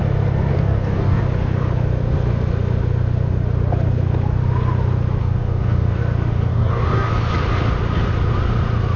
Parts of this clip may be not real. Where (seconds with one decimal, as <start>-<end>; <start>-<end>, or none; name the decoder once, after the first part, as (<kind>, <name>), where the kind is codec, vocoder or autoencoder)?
0.5-1.2 (codec, DAC); 5.2-6.0; 6.5-7.1